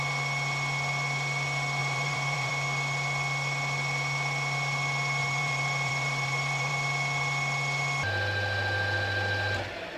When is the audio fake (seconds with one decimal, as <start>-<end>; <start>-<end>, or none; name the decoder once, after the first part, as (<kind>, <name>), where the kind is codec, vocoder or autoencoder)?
1.8-2.5 (vocoder, BigVGAN v2); 5.2-6.7